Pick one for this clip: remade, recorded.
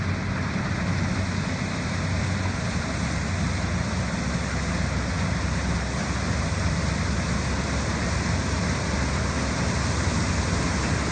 recorded